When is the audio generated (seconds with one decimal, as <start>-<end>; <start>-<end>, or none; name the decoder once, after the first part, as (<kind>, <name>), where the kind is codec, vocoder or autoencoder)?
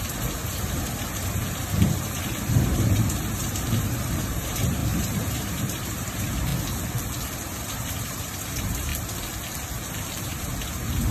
0.0-1.4 (vocoder, BigVGAN v2); 1.9-6.5; 7.6-8.9; 10.2-11.1